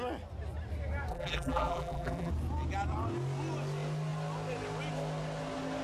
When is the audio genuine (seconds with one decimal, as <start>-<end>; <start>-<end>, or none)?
0.0-1.1; 2.3-5.8